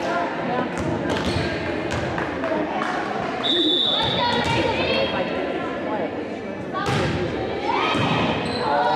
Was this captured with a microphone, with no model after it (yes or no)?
yes